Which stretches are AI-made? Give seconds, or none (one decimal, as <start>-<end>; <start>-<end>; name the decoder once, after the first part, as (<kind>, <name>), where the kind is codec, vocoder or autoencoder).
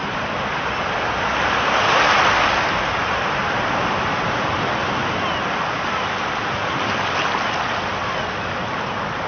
none